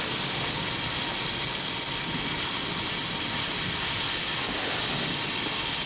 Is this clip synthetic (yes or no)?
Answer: no